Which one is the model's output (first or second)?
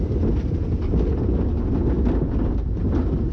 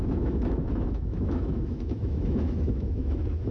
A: second